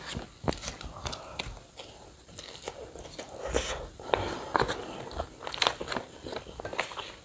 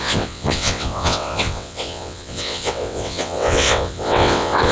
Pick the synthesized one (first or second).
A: second